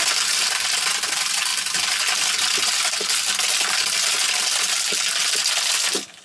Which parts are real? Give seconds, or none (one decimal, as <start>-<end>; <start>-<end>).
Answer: 0.0-6.2

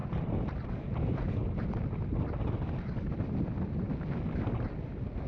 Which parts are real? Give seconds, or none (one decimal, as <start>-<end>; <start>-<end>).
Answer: 0.0-5.3

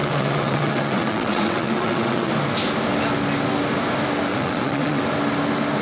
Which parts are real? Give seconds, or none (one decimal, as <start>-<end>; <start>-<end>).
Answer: 2.3-4.3; 5.0-5.8